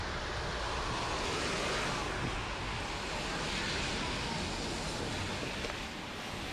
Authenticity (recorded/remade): recorded